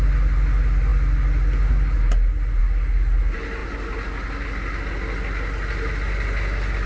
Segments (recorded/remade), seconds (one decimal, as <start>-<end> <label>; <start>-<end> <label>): 0.0-6.9 recorded